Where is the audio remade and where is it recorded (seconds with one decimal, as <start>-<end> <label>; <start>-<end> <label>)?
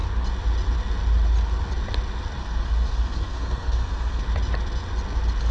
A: 0.0-2.4 recorded; 2.4-4.2 remade; 4.2-5.5 recorded